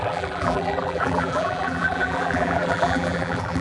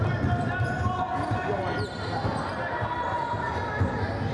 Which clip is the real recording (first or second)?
second